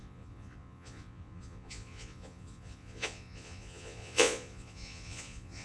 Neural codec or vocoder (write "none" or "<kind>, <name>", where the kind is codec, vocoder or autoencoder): vocoder, Vocos